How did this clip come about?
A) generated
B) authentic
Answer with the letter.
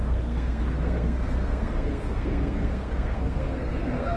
A